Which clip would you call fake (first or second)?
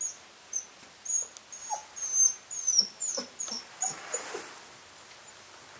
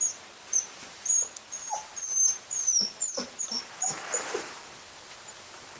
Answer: second